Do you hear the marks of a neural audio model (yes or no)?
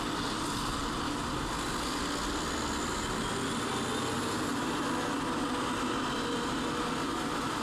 no